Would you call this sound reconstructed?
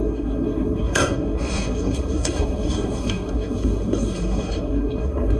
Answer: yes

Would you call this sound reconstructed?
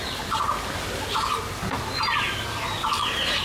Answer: no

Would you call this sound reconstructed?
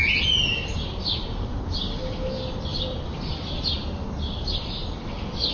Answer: no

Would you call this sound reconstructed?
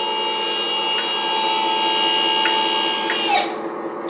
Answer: no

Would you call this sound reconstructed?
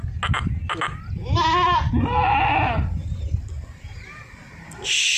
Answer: no